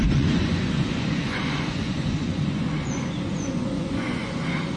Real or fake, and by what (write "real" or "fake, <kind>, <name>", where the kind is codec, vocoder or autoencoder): fake, vocoder, Vocos